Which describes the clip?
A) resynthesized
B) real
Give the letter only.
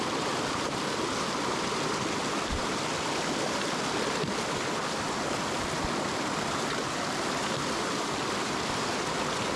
B